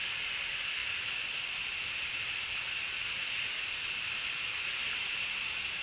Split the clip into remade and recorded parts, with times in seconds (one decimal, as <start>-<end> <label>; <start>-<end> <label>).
0.0-5.8 recorded